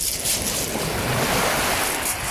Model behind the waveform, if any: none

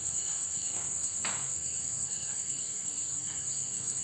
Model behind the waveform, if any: codec, SNAC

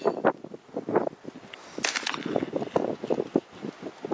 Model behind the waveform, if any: none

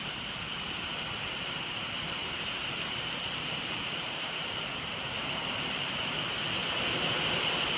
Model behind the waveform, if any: none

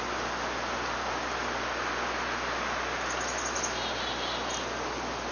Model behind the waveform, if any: none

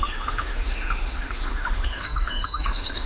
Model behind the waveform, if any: autoencoder, DAC-VAE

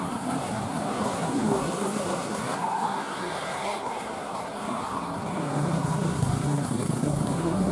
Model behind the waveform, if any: codec, SNAC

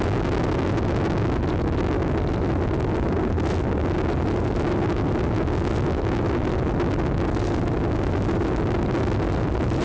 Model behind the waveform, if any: none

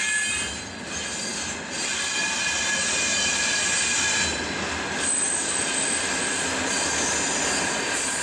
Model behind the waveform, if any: none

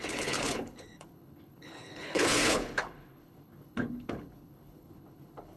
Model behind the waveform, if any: codec, HILCodec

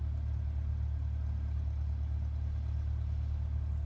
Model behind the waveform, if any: none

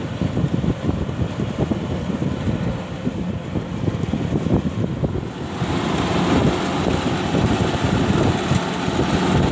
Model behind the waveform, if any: none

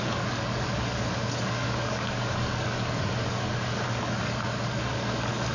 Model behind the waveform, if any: codec, DAC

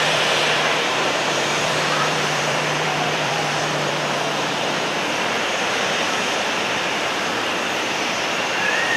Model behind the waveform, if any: vocoder, BigVGAN v2